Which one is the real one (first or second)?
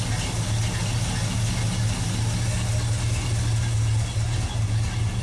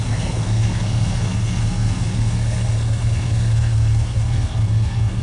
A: first